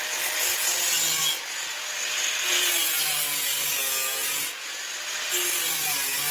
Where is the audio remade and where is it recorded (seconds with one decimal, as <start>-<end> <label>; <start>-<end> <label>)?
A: 0.0-6.3 recorded